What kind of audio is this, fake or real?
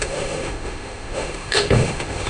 fake